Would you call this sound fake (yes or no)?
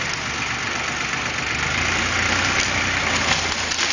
yes